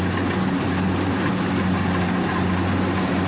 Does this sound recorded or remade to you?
recorded